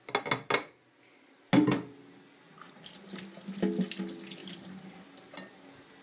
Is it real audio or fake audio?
real